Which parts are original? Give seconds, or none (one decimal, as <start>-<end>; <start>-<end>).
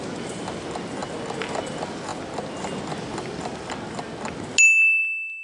0.0-5.4